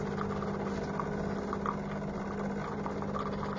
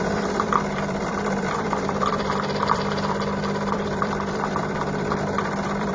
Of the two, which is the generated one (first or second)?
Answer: second